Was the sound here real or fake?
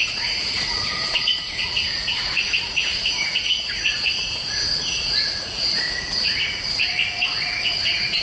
fake